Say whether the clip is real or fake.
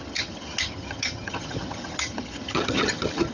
fake